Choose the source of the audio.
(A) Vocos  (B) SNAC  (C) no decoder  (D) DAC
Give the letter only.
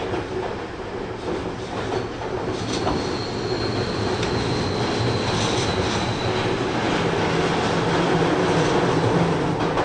C